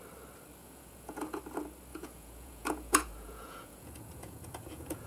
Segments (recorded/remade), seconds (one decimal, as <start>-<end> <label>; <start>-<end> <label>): 0.0-0.6 recorded; 0.6-1.4 remade; 1.4-1.9 recorded; 1.9-5.1 remade